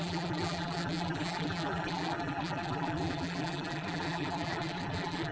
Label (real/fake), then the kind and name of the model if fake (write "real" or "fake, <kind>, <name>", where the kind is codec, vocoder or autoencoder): fake, vocoder, BigVGAN v2